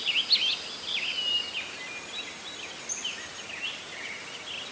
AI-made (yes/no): no